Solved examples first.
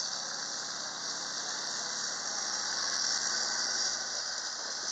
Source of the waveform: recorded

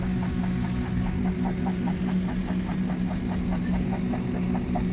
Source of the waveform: recorded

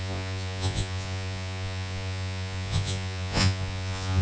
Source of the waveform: remade